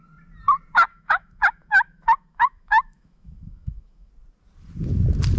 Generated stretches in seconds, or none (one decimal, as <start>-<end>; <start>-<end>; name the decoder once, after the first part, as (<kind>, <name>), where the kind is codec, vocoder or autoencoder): 0.9-4.1 (autoencoder, DAC-VAE)